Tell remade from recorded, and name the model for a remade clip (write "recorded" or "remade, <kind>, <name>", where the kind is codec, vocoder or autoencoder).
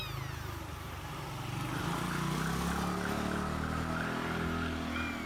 recorded